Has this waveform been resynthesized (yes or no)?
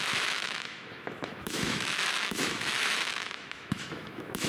yes